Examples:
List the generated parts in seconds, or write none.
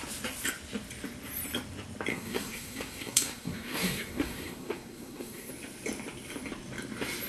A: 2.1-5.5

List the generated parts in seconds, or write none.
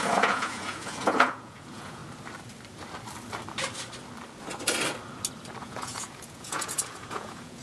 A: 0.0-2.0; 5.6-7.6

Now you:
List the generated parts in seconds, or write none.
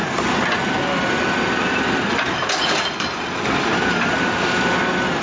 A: none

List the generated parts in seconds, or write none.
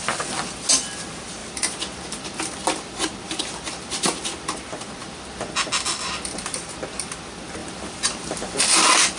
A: none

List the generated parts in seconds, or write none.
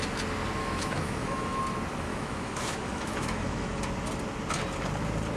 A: 0.6-1.6; 2.1-3.8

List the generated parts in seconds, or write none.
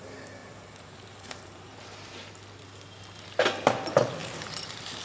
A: 0.4-2.3; 4.2-5.0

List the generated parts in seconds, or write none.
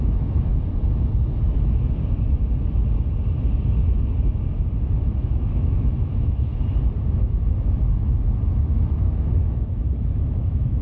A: 0.0-0.5; 5.2-6.5; 8.7-10.8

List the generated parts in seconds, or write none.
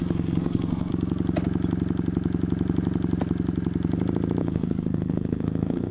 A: 0.0-0.9; 4.4-5.9